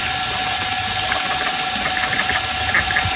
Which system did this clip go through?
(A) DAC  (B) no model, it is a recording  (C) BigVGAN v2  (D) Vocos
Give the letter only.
B